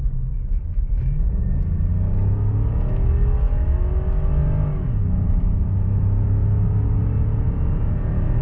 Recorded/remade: recorded